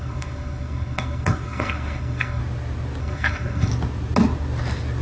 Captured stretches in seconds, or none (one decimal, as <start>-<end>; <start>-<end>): 2.4-3.0; 3.7-5.0